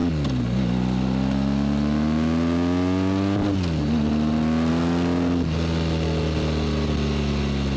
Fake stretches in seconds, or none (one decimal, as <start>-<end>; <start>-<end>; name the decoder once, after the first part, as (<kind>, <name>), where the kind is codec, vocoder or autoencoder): none